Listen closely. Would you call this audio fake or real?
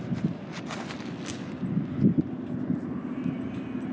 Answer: real